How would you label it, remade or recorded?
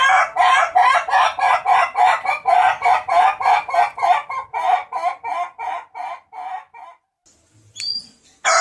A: recorded